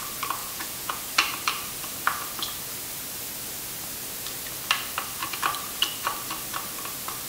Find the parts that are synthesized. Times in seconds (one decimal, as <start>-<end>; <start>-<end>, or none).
0.4-1.0